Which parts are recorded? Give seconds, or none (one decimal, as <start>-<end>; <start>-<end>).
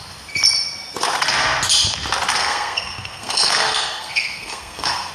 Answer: 0.0-2.4